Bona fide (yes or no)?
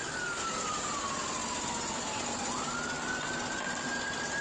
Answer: yes